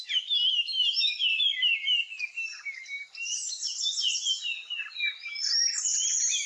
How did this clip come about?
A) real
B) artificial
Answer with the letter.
A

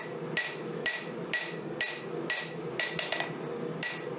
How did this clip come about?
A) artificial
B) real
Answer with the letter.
B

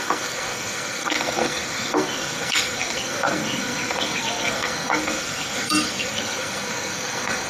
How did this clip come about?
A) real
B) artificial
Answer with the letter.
B